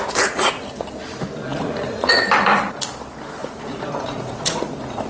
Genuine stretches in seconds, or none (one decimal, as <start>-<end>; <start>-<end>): 0.0-1.5; 2.3-3.4; 4.6-5.1